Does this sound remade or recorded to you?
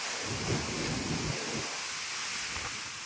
recorded